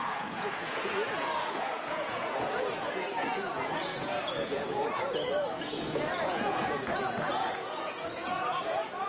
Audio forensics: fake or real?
fake